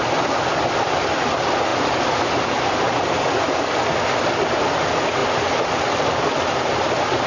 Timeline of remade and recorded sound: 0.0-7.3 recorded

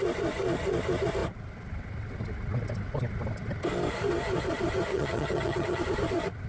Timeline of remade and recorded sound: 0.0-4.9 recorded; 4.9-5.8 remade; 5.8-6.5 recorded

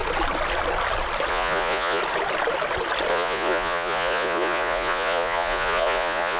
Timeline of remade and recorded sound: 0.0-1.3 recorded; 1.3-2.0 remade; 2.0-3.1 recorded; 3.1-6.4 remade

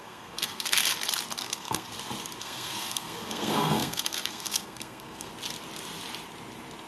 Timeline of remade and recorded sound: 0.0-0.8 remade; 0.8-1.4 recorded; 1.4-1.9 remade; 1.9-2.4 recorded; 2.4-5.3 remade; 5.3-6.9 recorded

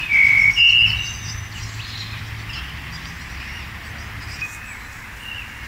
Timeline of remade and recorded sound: 0.0-5.7 recorded

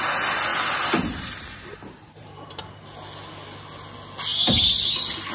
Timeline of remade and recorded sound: 0.0-0.5 recorded; 0.5-2.6 remade; 2.6-5.3 recorded

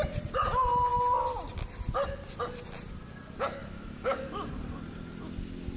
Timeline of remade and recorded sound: 0.0-3.6 recorded; 3.6-4.5 remade; 4.5-5.8 recorded

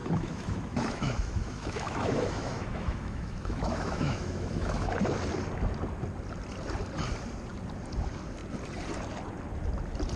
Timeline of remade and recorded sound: 0.0-4.9 remade; 4.9-10.2 recorded